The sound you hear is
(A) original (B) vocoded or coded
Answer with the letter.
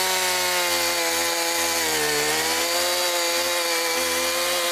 A